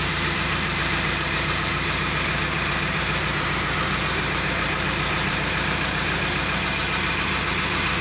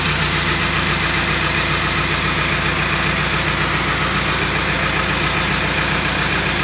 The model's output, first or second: first